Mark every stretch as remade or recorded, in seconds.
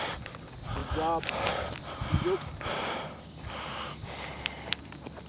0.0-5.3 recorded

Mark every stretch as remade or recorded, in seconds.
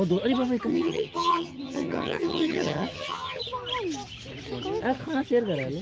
0.0-0.7 recorded; 0.7-3.4 remade; 3.4-5.8 recorded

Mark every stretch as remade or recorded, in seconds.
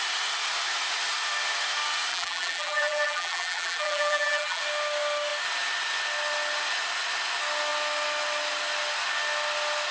0.0-2.1 recorded; 2.1-4.6 remade; 4.6-9.9 recorded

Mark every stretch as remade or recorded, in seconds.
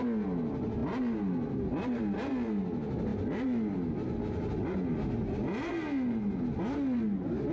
0.0-7.5 recorded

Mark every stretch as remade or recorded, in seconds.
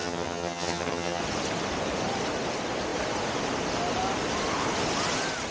0.0-1.2 remade; 1.2-5.5 recorded